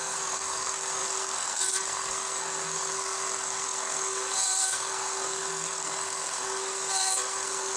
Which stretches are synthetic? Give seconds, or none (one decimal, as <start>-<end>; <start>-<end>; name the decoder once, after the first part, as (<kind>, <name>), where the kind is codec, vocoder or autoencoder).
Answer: 0.0-7.8 (codec, SNAC)